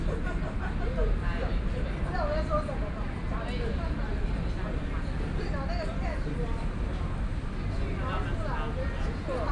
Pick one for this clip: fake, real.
real